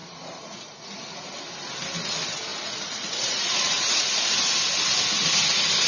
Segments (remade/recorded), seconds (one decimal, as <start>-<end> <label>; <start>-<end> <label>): 0.0-1.4 remade; 1.4-2.5 recorded; 2.5-4.2 remade; 4.2-5.9 recorded